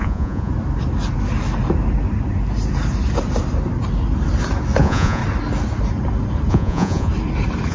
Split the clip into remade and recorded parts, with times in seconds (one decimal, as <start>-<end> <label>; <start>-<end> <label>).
0.0-0.5 remade; 0.5-4.8 recorded; 4.8-5.2 remade; 5.2-6.5 recorded; 6.5-7.1 remade; 7.1-7.7 recorded